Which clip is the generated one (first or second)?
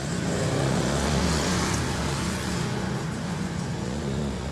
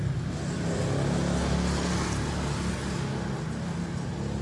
first